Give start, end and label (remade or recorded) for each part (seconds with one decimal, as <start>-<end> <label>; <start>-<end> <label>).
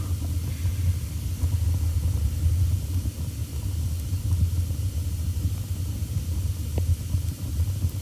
0.0-8.0 recorded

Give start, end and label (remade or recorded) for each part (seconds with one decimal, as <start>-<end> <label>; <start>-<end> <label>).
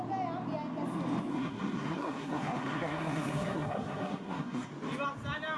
0.0-1.3 recorded; 1.3-4.7 remade; 4.7-5.6 recorded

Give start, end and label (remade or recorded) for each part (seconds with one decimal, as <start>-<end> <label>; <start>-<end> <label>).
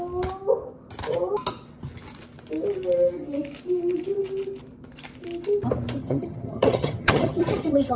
0.0-6.0 recorded; 6.0-8.0 remade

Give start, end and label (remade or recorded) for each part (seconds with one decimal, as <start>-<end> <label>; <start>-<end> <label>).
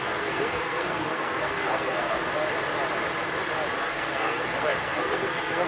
0.0-2.3 remade; 2.3-3.8 recorded; 3.8-5.7 remade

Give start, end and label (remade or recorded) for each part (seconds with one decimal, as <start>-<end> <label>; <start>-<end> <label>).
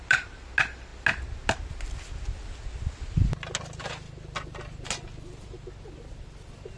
0.0-6.8 recorded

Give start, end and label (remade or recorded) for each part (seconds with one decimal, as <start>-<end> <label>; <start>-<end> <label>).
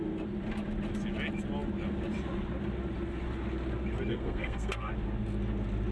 0.0-4.1 recorded; 4.1-4.9 remade; 4.9-5.9 recorded